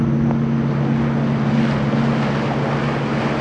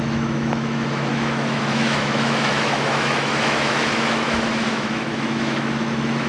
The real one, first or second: first